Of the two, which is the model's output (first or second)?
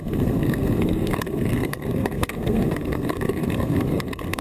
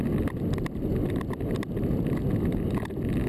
first